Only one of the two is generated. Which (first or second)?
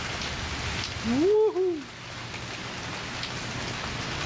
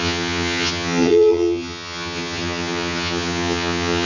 second